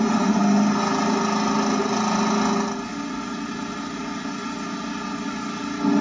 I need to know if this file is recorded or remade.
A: recorded